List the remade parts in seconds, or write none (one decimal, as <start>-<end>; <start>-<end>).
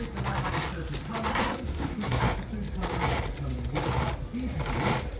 1.3-2.2